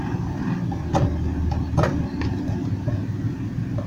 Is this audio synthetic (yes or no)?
no